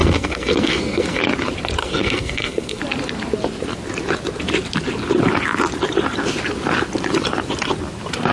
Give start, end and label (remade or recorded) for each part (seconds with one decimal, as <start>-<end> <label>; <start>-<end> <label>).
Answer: 0.0-1.2 remade; 1.2-1.8 recorded; 1.8-2.8 remade; 2.8-8.3 recorded